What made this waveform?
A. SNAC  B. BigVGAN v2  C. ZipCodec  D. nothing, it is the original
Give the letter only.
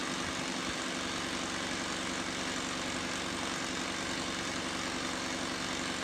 D